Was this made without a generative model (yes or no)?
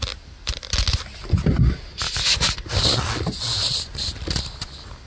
yes